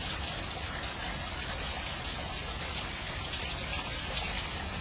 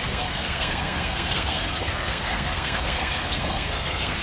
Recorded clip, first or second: first